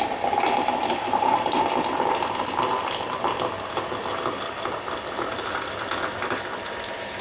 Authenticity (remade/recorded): recorded